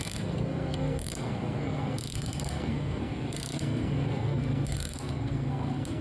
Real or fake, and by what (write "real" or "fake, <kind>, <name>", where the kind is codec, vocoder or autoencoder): fake, codec, SNAC